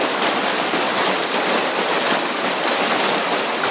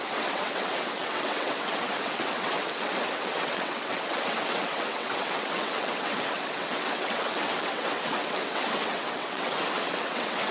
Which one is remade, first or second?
second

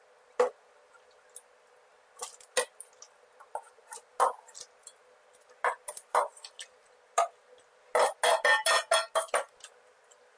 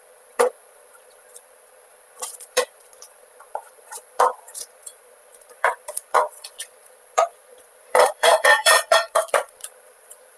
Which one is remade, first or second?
second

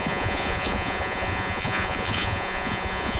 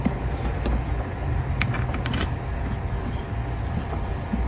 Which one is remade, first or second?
first